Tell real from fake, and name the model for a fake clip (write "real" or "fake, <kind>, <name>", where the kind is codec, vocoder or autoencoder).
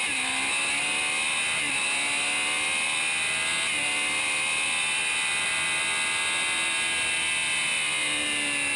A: real